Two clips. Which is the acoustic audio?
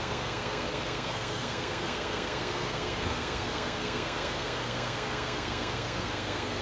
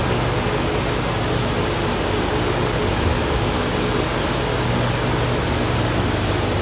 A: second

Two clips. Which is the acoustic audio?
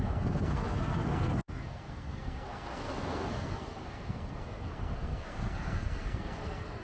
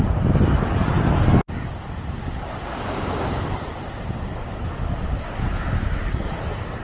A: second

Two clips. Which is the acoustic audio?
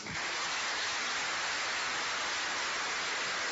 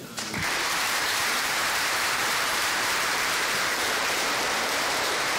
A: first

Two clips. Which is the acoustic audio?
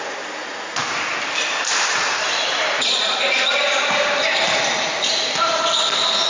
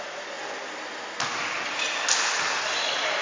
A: second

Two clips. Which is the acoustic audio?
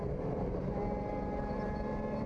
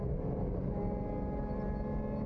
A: second